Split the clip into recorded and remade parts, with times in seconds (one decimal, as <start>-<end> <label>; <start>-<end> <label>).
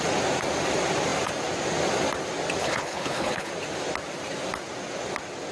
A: 0.0-2.6 recorded; 2.6-3.5 remade; 3.5-5.5 recorded